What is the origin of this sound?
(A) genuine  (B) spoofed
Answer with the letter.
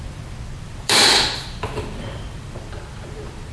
B